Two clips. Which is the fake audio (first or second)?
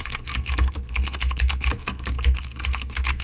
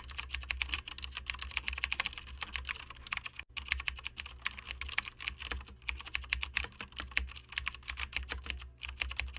first